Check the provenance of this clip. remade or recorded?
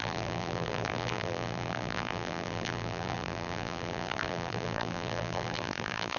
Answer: remade